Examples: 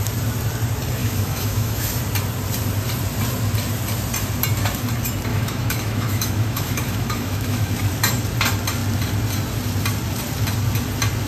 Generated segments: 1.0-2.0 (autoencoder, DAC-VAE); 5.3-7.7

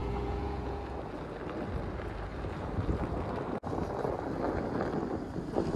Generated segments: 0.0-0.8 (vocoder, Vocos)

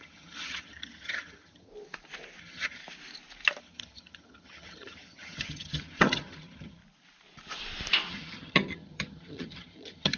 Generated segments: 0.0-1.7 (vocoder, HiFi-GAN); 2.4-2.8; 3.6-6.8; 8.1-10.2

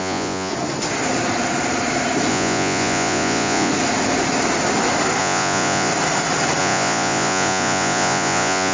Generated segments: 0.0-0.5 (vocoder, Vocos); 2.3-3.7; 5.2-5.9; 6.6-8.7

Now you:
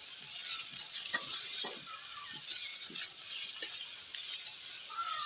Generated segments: 0.4-1.6 (vocoder, WaveNeXt); 2.7-3.5

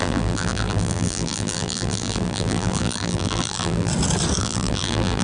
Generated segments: 0.0-3.9 (vocoder, BigVGAN v2); 4.4-5.2

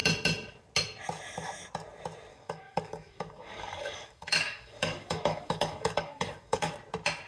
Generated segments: 2.3-6.7 (codec, DAC)